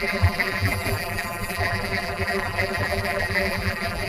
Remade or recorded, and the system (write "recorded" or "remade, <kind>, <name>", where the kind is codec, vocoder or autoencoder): remade, vocoder, BigVGAN v2